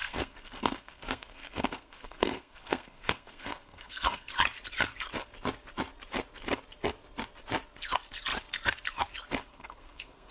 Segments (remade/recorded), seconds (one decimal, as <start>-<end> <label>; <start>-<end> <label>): 0.0-4.3 remade; 4.3-9.5 recorded; 9.5-10.3 remade